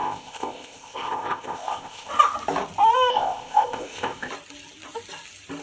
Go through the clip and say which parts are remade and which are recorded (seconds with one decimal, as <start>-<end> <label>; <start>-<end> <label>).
0.0-2.1 remade; 2.1-3.1 recorded; 3.1-4.3 remade; 4.3-5.6 recorded